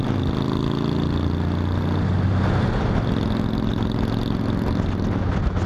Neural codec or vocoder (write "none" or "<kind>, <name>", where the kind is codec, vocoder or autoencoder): none